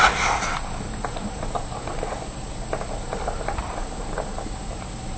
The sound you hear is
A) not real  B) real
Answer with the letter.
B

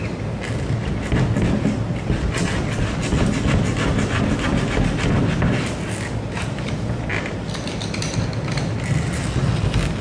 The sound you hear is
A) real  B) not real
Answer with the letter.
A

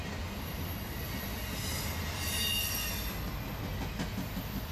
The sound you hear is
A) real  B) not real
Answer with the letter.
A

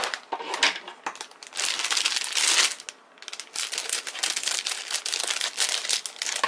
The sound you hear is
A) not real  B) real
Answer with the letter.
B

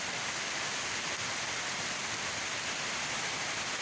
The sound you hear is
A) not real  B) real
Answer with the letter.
B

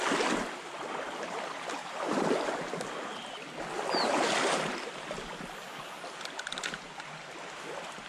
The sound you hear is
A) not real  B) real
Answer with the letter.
B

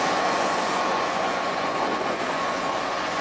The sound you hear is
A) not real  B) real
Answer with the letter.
A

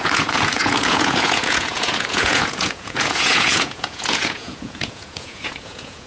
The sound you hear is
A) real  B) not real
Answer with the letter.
B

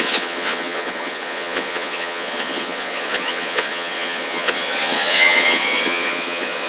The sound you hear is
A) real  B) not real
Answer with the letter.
B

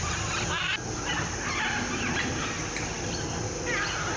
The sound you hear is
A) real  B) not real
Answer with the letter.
A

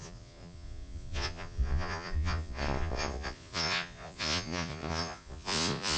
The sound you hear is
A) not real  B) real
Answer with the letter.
A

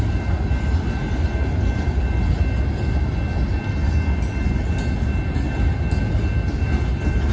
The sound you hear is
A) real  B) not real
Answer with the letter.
A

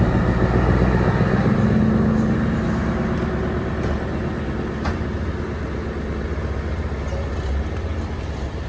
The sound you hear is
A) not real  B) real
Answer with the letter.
B